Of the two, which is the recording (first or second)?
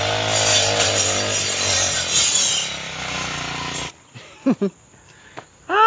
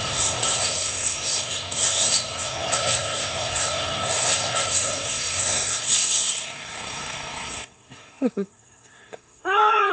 first